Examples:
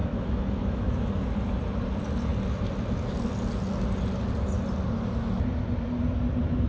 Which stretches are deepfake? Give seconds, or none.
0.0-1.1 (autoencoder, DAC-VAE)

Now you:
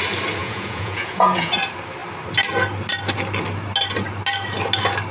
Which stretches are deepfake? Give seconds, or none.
0.4-1.5 (vocoder, Vocos)

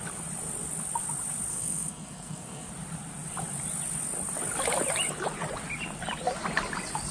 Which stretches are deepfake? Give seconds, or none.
1.5-2.7 (codec, SNAC)

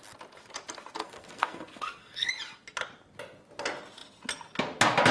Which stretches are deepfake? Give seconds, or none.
1.0-2.3 (codec, SNAC)

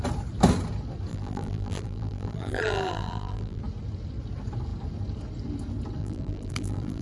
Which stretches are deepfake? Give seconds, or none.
1.1-3.6 (vocoder, BigVGAN v2); 6.0-7.0

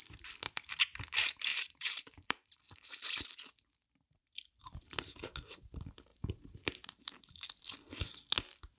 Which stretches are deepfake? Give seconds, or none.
1.5-3.2 (vocoder, BigVGAN v2); 6.1-7.3

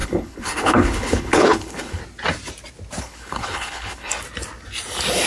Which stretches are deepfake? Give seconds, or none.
0.0-2.0 (codec, HILCodec); 3.0-4.1

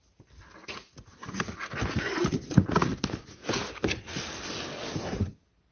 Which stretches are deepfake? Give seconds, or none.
0.6-1.3 (vocoder, Vocos); 2.2-2.9